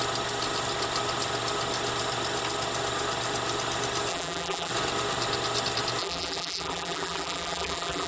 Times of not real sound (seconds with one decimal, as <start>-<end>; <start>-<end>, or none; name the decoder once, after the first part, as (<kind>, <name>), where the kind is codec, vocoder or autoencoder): 4.1-4.7 (vocoder, BigVGAN v2); 6.0-8.1